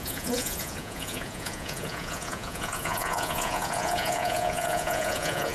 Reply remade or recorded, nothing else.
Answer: remade